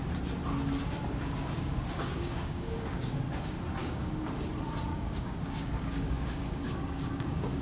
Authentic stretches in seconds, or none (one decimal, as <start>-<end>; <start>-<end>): 0.0-1.1; 3.2-3.8; 4.3-4.9

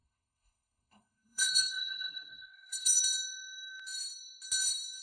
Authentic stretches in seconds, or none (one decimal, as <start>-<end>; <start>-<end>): 3.0-5.0

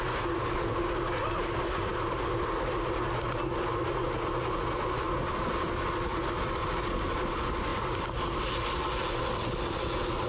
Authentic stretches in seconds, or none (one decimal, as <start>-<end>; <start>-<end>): 0.0-10.3

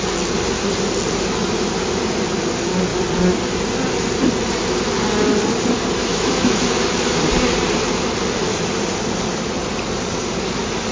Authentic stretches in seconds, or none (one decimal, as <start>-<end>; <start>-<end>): 0.0-6.0; 7.2-10.9

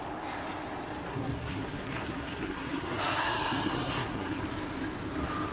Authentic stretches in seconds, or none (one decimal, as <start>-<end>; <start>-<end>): 0.0-1.1; 4.4-5.5

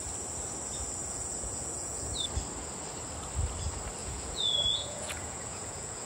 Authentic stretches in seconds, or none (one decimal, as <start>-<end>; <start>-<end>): 0.0-1.0; 2.1-4.0

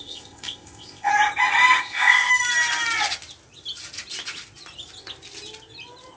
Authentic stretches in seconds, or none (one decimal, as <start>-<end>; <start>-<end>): 1.1-1.8; 2.3-6.2

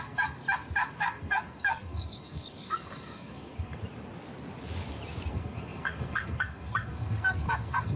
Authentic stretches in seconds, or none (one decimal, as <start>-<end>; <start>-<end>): 0.4-1.0; 3.8-5.3